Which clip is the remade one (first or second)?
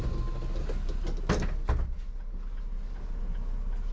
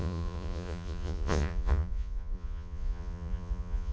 second